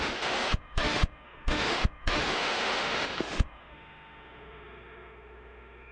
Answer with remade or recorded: remade